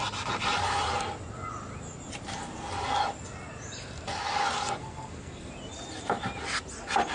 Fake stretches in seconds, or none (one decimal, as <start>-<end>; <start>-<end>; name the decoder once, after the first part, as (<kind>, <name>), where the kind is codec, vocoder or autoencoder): 4.8-5.5 (codec, SNAC)